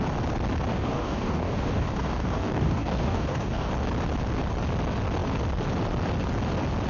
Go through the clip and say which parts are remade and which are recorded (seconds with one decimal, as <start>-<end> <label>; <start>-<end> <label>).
0.0-0.7 recorded; 0.7-3.7 remade; 3.7-6.9 recorded